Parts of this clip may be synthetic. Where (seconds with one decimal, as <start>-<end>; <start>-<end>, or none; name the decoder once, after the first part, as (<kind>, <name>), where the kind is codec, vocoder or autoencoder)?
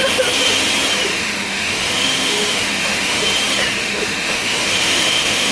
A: 1.1-3.2 (autoencoder, DAC-VAE); 3.8-5.5